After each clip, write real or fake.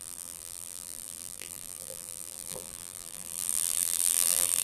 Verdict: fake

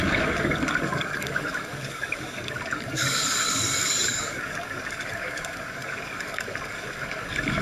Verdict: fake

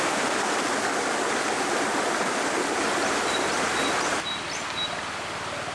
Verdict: real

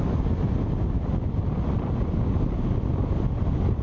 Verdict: real